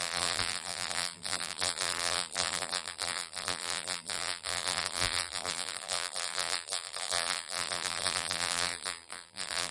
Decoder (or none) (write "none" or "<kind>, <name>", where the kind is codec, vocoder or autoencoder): vocoder, BigVGAN v2